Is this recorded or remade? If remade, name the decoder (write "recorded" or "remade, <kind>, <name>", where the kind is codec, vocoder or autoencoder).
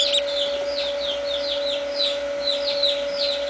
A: recorded